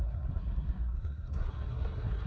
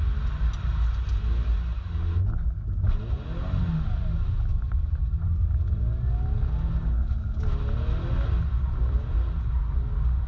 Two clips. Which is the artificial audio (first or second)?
first